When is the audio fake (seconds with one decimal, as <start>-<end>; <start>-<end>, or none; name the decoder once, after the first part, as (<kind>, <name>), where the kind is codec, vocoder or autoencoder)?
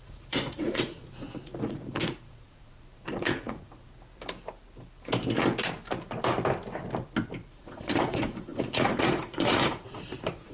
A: 0.0-3.9 (vocoder, Vocos); 7.5-10.5